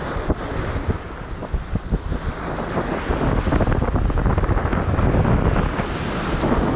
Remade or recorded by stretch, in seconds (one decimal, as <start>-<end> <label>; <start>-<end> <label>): 0.0-6.8 recorded